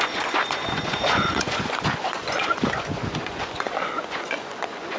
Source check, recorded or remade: remade